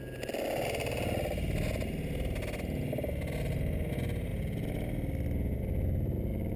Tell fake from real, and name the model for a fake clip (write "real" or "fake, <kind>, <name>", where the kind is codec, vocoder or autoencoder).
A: real